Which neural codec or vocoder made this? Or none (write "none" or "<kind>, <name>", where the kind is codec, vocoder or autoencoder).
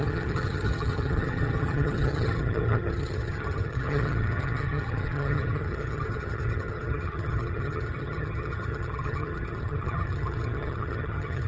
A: vocoder, HiFi-GAN